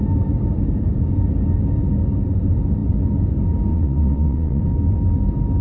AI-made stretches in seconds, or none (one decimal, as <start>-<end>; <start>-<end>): 3.7-4.6